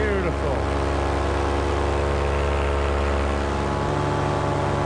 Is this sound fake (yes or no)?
no